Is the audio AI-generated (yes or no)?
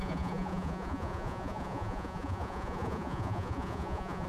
yes